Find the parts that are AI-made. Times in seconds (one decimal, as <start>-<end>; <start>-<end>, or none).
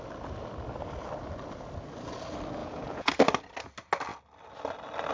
2.6-3.1